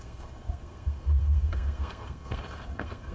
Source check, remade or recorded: remade